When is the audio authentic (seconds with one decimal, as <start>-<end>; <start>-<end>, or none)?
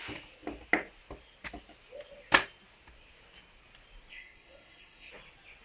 0.0-4.1; 5.1-5.6